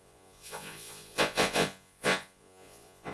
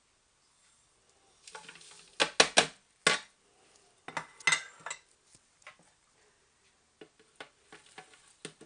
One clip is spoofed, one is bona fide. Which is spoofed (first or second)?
first